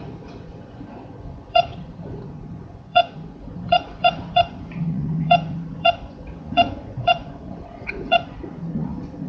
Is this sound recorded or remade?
remade